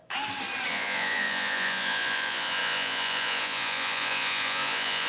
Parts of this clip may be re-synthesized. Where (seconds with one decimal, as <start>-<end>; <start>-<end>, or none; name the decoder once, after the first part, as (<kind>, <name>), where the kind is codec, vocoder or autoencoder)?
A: 0.7-5.1 (vocoder, Vocos)